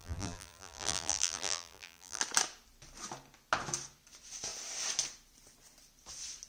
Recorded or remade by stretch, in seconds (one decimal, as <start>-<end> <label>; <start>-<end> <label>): 0.0-2.2 remade; 2.2-6.5 recorded